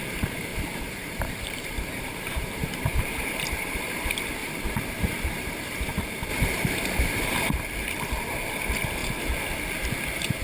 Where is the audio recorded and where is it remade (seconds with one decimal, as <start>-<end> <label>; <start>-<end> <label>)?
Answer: 0.0-0.5 recorded; 0.5-4.0 remade; 4.0-4.4 recorded; 4.4-5.5 remade; 5.5-6.3 recorded; 6.3-7.5 remade; 7.5-10.4 recorded